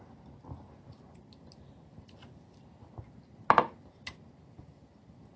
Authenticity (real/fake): real